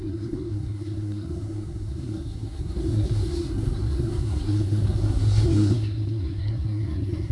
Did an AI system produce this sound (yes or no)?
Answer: yes